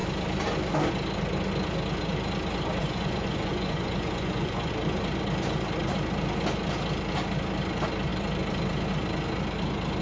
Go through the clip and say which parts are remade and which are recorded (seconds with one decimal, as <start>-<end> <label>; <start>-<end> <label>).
0.0-2.8 recorded; 2.8-4.7 remade; 4.7-10.0 recorded